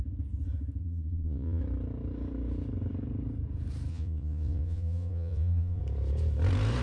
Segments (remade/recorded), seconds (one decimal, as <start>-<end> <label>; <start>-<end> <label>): 0.0-0.8 recorded; 0.8-1.6 remade; 1.6-3.9 recorded; 3.9-5.8 remade; 5.8-6.8 recorded